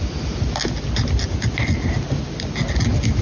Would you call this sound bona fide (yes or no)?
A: yes